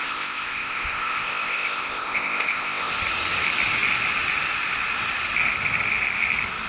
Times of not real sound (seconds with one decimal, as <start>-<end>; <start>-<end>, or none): 0.0-2.9